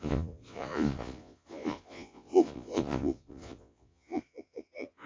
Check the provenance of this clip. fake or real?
fake